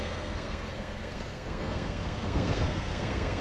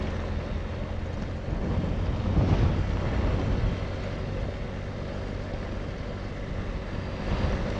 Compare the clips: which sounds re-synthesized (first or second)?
first